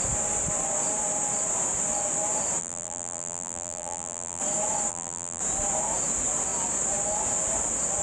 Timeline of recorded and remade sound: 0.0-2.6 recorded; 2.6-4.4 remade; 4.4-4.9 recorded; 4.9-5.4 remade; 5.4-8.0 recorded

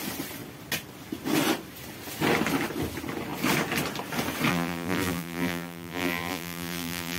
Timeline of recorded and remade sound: 0.0-4.5 recorded; 4.5-7.2 remade